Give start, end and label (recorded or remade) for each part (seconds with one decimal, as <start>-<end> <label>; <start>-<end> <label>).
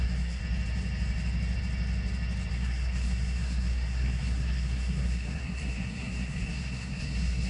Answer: 0.0-0.4 remade; 0.4-2.5 recorded; 2.5-7.5 remade